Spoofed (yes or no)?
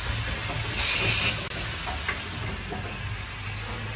no